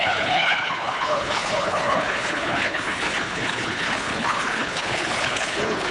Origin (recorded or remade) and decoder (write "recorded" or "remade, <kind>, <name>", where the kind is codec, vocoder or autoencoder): remade, codec, HILCodec